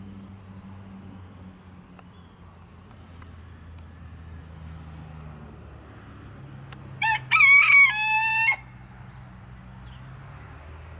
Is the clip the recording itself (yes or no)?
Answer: yes